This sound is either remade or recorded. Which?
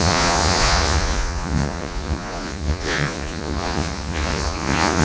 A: remade